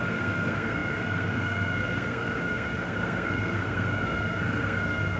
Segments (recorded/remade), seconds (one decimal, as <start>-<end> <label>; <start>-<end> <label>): 0.0-5.2 remade